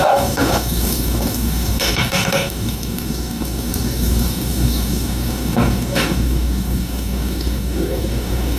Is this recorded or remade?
remade